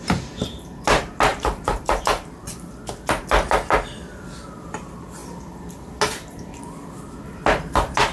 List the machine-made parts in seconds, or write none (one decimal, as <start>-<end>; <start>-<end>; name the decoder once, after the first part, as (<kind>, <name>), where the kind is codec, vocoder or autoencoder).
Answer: 1.3-2.4 (vocoder, BigVGAN v2)